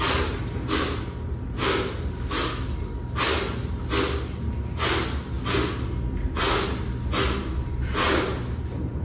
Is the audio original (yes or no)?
yes